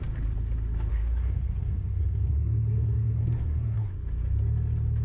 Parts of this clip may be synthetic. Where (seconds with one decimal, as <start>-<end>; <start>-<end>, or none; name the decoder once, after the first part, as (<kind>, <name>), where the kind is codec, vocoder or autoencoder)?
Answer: 0.9-3.9 (codec, SNAC)